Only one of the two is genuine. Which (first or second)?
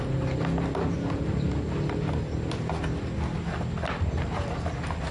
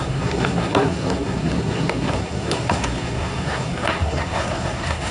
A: first